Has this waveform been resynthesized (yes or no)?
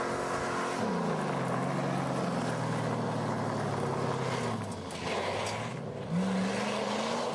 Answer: no